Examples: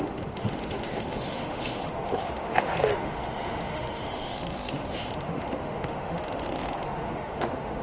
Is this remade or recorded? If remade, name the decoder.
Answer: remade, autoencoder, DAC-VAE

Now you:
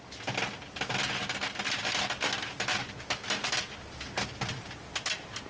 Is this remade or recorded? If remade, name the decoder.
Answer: recorded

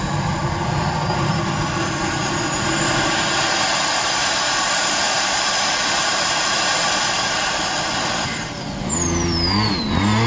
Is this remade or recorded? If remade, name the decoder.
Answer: recorded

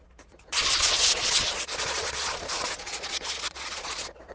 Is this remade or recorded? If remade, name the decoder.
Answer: remade, vocoder, Vocos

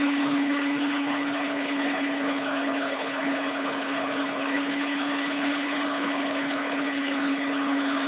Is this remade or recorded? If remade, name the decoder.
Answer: remade, codec, HILCodec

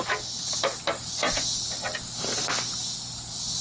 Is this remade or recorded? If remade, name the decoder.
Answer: recorded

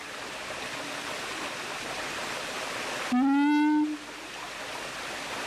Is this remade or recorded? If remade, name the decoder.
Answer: recorded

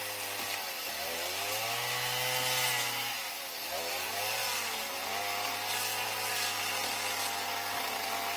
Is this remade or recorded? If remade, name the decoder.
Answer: recorded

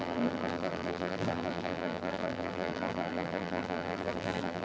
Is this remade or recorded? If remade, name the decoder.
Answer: remade, vocoder, BigVGAN v2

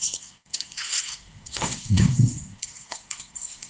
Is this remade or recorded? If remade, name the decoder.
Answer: remade, codec, SNAC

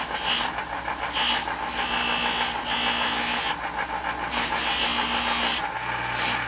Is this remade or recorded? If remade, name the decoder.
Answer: recorded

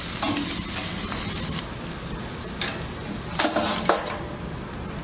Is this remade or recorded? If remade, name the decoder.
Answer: recorded